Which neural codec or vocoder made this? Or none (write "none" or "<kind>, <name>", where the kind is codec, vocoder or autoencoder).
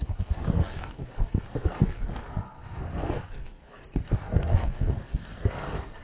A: codec, SNAC